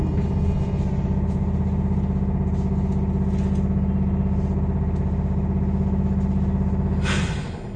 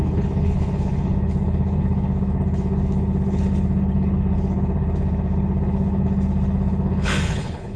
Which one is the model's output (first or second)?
second